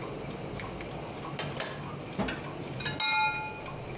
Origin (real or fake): real